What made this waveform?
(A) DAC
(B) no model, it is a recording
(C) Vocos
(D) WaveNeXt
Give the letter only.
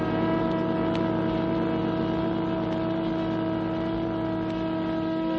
B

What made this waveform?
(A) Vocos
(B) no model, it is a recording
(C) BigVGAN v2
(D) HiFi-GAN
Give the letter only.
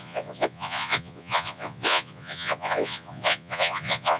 A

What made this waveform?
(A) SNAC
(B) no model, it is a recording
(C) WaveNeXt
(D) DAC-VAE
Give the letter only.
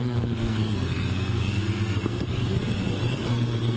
A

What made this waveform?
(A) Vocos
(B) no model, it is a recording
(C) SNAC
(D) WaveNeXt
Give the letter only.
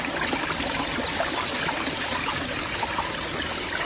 B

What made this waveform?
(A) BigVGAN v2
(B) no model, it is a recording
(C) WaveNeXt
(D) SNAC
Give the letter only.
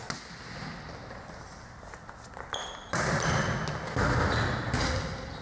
B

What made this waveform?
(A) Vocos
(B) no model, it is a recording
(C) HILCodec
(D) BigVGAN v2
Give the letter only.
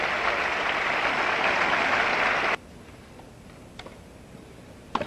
B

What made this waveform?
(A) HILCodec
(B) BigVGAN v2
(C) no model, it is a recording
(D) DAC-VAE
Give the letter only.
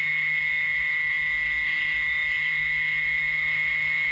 D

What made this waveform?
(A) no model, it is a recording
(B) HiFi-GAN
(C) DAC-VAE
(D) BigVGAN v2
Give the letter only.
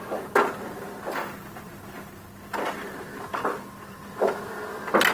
A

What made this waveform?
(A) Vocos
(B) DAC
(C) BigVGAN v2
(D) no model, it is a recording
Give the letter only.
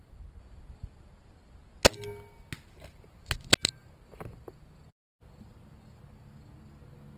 D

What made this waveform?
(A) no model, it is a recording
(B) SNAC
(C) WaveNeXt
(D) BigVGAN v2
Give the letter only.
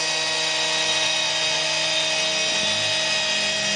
A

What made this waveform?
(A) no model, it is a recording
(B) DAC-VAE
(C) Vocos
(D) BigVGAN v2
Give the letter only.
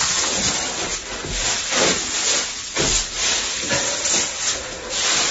A